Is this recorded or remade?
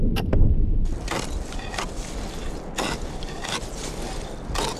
recorded